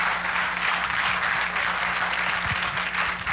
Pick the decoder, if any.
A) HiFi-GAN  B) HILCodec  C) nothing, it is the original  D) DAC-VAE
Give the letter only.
C